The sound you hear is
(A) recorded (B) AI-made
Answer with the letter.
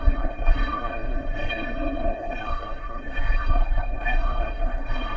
B